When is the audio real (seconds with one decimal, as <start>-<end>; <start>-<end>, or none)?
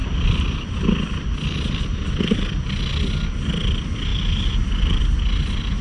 0.0-5.8